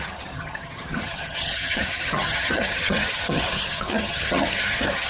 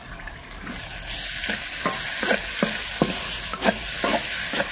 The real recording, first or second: second